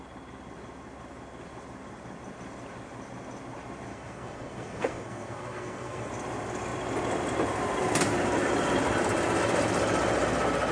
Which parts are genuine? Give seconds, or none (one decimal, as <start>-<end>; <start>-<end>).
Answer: 0.0-3.9; 6.1-10.7